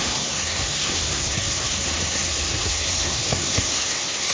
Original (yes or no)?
no